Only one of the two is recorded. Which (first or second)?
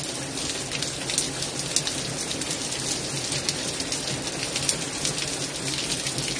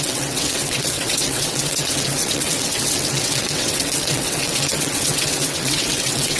first